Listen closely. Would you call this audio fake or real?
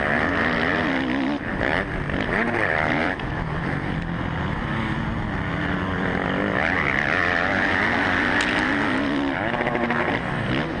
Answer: real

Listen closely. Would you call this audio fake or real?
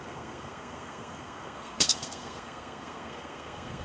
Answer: fake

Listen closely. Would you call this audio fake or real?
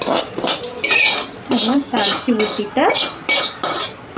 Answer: real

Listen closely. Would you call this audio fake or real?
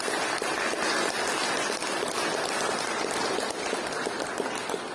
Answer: real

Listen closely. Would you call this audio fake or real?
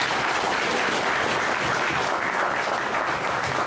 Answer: real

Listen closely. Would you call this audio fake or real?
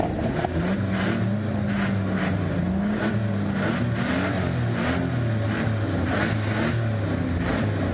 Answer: real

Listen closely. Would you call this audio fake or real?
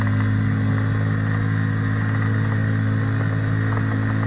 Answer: real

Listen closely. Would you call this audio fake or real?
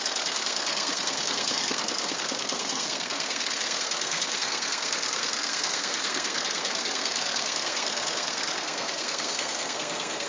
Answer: fake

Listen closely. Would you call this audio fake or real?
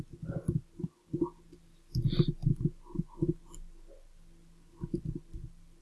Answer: real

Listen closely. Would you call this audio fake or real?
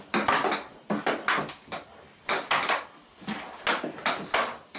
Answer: real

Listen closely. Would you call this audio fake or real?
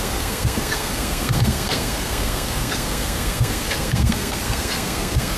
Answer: fake